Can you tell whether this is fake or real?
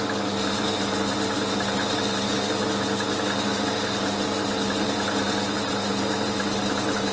real